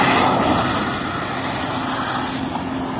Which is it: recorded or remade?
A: recorded